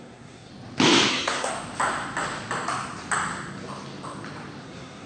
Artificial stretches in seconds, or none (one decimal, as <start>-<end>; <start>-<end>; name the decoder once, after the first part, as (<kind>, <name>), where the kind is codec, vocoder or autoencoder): 0.0-0.5 (codec, SNAC); 1.1-1.5; 4.6-5.1